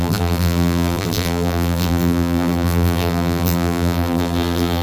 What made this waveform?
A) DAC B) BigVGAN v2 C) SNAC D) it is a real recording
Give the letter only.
B